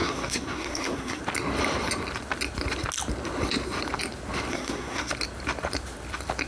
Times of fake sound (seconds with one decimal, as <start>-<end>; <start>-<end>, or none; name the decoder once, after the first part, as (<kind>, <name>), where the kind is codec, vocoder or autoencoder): 0.0-1.2 (codec, SNAC); 4.5-5.1